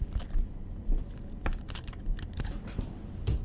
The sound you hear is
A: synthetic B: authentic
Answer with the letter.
B